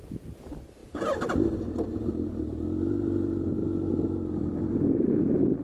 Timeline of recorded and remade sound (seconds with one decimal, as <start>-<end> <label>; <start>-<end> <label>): 0.0-3.6 remade; 3.6-4.7 recorded; 4.7-5.6 remade